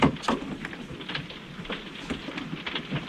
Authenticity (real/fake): real